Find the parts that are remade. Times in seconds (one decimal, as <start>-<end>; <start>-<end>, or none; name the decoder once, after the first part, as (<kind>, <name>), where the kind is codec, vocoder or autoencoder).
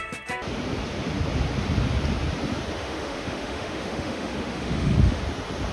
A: 2.8-5.2 (autoencoder, DAC-VAE)